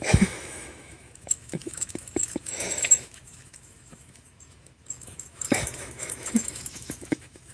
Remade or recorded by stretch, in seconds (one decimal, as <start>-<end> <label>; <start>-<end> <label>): 0.0-7.5 remade